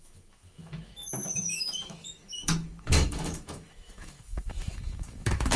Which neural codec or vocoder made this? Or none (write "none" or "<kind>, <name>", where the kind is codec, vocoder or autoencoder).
autoencoder, DAC-VAE